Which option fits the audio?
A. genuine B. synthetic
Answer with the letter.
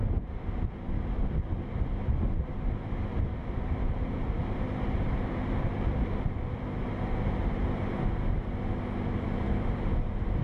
A